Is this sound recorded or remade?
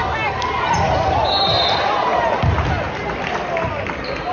recorded